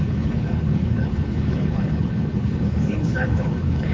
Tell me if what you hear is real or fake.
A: fake